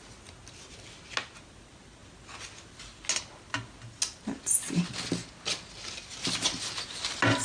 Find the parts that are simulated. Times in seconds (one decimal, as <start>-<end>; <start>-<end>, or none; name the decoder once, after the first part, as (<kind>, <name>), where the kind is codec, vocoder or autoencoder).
none